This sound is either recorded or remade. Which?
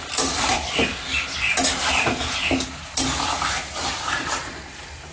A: recorded